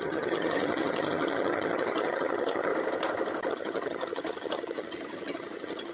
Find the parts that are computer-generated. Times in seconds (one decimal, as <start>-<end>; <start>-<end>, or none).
0.0-2.7; 3.5-5.9